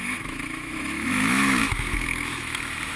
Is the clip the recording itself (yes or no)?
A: no